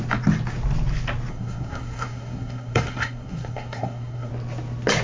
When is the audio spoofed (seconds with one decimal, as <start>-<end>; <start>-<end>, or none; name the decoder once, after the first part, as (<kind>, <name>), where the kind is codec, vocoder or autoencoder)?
1.3-4.3 (codec, SNAC)